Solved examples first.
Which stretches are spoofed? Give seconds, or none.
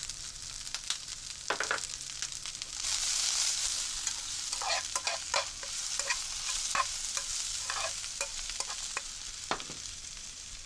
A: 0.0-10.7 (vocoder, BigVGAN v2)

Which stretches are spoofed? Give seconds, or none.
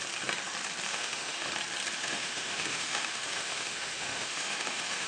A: 0.9-1.5 (autoencoder, DAC-VAE); 2.0-5.1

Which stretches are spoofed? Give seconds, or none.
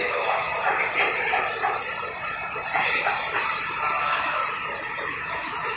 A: 0.0-0.5 (autoencoder, DAC-VAE); 4.0-4.4; 5.1-5.8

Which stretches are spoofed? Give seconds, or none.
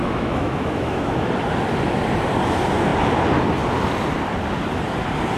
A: 0.0-1.3 (autoencoder, DAC-VAE)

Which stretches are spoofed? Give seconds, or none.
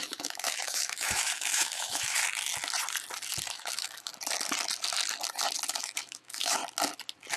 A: 0.0-2.2 (autoencoder, DAC-VAE); 3.5-4.1; 5.8-6.6